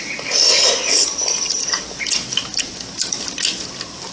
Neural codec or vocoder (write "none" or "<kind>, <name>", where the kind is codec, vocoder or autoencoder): none